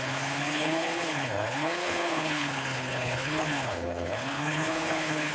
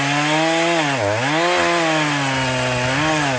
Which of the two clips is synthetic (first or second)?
first